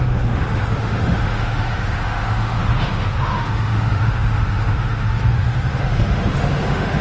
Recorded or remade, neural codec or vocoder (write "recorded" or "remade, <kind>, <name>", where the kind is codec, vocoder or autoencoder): remade, autoencoder, DAC-VAE